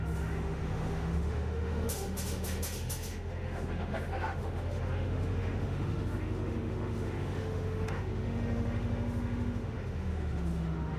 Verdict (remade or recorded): remade